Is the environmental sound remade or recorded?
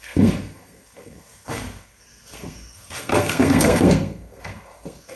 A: remade